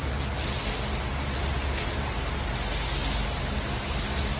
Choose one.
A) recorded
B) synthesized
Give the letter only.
A